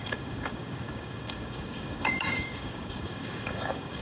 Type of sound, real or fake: fake